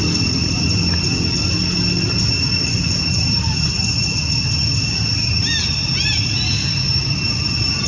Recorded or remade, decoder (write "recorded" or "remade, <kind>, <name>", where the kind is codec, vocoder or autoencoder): recorded